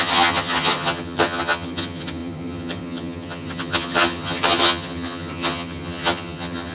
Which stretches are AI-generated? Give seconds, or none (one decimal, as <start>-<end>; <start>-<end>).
0.0-6.7